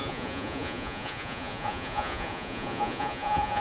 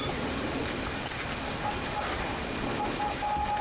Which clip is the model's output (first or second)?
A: first